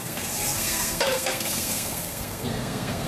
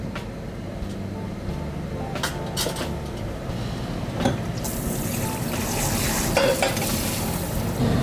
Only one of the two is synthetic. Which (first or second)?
first